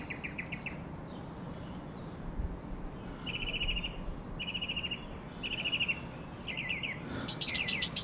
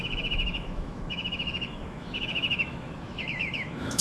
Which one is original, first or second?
first